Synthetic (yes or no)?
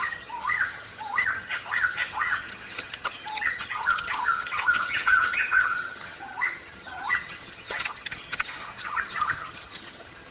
yes